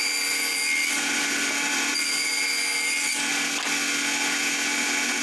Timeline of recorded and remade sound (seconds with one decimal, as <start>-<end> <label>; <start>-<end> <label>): 0.0-0.6 remade; 0.6-1.2 recorded; 1.2-1.9 remade; 1.9-5.2 recorded